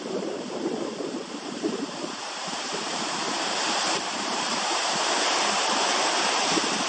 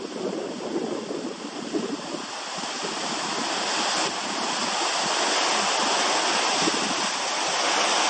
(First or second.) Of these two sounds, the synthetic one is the first